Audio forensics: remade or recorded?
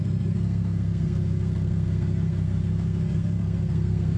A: remade